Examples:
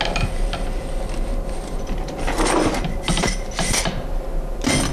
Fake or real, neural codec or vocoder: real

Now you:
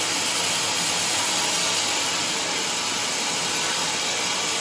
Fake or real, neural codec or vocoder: real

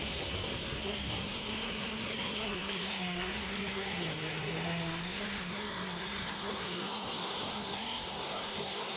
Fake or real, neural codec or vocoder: fake, codec, SNAC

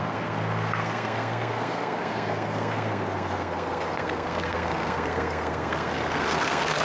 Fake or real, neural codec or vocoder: fake, codec, SNAC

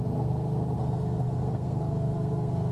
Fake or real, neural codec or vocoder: fake, codec, SNAC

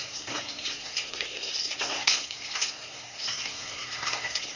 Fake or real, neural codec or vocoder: fake, codec, SNAC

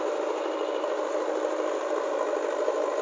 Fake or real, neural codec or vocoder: real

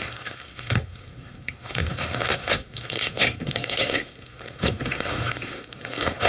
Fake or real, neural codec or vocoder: fake, codec, SNAC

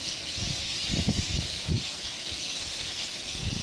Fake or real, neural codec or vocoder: fake, codec, SNAC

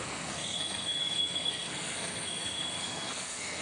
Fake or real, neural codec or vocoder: fake, codec, SNAC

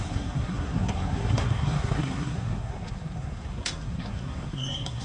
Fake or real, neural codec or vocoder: fake, codec, SNAC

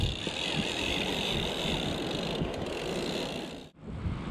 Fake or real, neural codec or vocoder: real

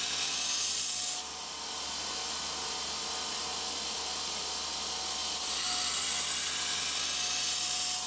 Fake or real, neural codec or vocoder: real